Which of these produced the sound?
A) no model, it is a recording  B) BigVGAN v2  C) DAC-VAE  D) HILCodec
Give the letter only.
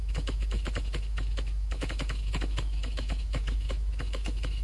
C